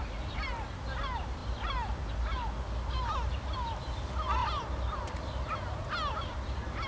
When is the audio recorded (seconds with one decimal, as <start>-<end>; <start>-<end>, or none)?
0.0-6.9